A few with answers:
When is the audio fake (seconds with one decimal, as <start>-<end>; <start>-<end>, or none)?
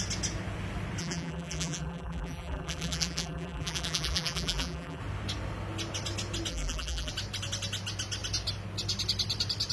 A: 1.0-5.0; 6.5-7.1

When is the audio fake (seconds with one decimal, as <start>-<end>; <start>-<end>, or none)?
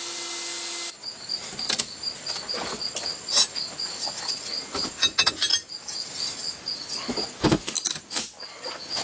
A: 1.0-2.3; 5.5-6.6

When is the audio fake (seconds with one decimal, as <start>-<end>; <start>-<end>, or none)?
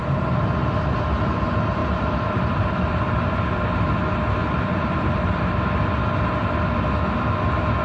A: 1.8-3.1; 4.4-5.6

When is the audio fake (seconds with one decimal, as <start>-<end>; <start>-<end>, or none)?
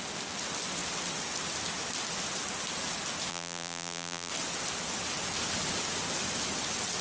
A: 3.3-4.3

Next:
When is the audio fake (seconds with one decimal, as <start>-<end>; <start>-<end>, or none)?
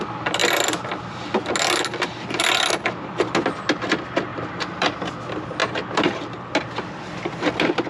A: 4.3-5.1